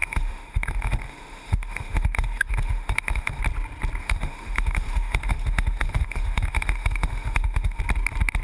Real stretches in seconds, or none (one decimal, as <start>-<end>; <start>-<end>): 3.4-4.0; 7.8-8.4